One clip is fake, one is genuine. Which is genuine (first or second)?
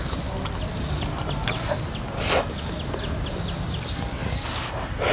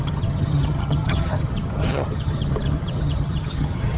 first